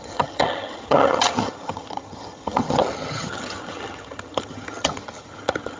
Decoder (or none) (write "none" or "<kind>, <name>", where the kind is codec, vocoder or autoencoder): vocoder, HiFi-GAN